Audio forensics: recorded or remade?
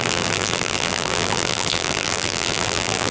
remade